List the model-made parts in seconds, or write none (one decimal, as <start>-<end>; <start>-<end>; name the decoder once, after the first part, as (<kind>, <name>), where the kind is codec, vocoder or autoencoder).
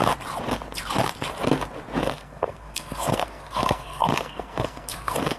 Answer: 2.0-5.4 (codec, SNAC)